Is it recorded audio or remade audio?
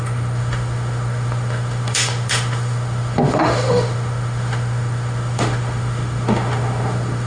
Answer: remade